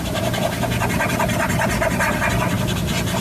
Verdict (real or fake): real